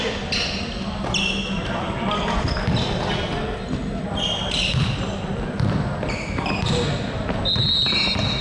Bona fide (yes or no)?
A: yes